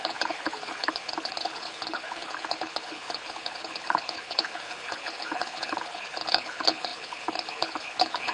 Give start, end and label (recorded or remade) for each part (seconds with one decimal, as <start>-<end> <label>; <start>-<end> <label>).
0.0-8.3 remade

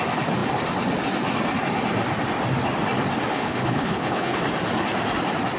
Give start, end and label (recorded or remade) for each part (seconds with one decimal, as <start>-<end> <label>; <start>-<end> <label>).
0.0-3.3 recorded; 3.3-4.4 remade; 4.4-5.6 recorded